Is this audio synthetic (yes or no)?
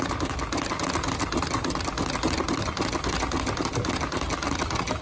no